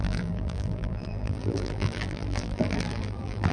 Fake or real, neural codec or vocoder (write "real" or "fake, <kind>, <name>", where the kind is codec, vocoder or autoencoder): fake, vocoder, BigVGAN v2